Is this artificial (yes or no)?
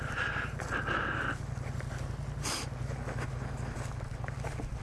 no